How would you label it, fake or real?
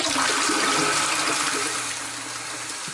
real